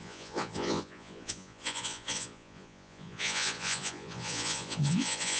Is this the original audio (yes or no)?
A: no